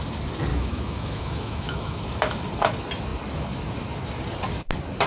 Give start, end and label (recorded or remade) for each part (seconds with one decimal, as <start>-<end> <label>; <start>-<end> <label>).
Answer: 0.0-0.5 recorded; 0.5-2.0 remade; 2.0-5.1 recorded